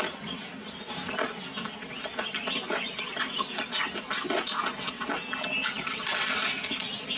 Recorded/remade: recorded